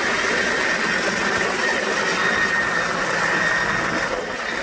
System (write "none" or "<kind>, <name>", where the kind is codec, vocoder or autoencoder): none